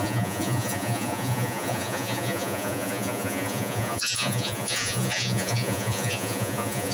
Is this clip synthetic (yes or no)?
yes